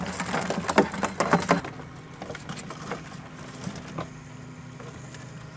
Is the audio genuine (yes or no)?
yes